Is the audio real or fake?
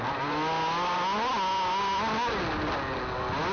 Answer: real